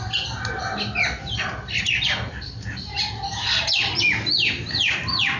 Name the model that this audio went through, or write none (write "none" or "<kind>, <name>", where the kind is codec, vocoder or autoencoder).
none